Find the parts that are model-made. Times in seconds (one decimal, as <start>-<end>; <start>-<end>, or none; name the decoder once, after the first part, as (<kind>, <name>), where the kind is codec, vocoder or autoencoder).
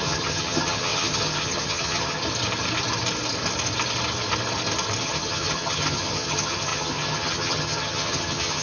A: 0.0-2.2 (vocoder, HiFi-GAN); 5.0-8.6